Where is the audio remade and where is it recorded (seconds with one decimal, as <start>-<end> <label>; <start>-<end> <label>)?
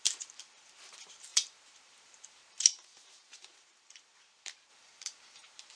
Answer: 0.0-5.8 remade